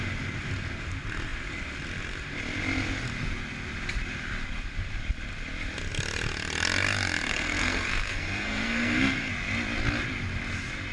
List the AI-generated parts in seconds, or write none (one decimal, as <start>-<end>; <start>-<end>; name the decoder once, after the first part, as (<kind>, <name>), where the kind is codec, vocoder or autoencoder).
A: 7.3-9.3 (codec, SNAC)